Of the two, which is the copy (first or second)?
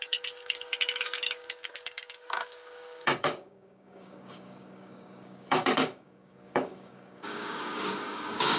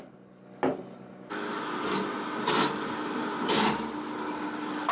first